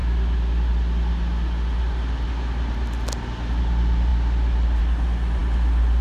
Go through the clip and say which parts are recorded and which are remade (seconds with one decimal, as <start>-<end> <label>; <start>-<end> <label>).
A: 0.0-6.0 recorded